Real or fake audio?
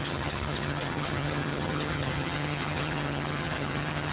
fake